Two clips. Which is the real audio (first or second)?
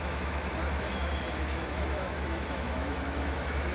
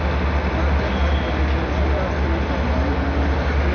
second